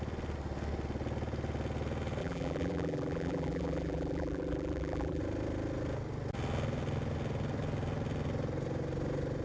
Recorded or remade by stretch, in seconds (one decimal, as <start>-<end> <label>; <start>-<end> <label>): 0.0-2.2 recorded; 2.2-5.2 remade; 5.2-9.4 recorded